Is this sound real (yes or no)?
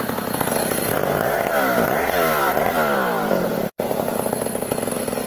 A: no